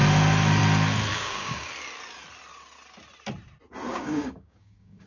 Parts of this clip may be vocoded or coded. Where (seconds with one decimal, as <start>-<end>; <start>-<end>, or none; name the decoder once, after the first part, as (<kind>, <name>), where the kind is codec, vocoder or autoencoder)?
1.1-1.7 (codec, DAC); 3.9-5.1